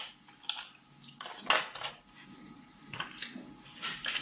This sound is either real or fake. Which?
real